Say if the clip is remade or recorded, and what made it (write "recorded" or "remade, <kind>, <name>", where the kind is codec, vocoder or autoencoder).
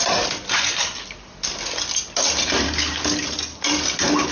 remade, vocoder, BigVGAN v2